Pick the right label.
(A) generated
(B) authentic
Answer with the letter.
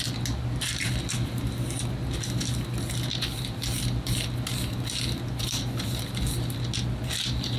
B